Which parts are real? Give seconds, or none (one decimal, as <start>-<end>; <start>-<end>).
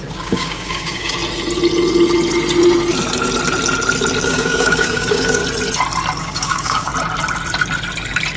1.2-4.2; 5.4-6.2; 6.9-8.4